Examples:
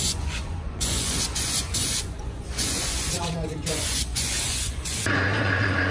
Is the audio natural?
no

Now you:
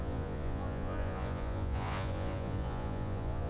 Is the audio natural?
no